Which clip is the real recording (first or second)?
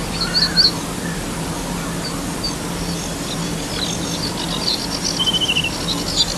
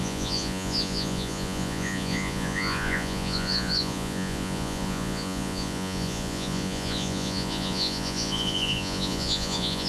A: first